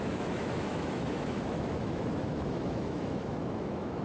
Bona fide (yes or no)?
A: no